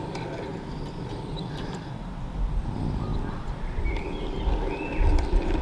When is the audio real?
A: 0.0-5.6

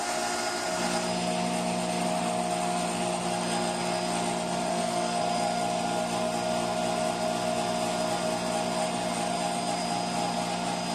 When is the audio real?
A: 0.0-4.7; 5.2-10.9

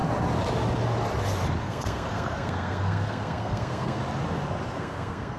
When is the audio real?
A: 0.0-1.6; 4.0-4.7

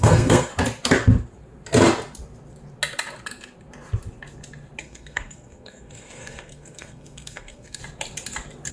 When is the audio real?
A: 0.5-4.8; 7.8-8.7

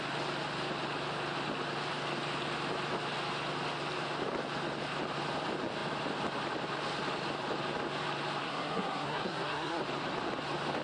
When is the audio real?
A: 0.0-8.4; 9.8-10.8

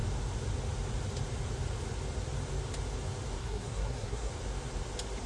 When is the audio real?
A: 0.0-3.4; 4.3-5.3